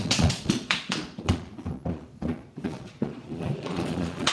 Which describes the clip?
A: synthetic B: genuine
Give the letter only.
A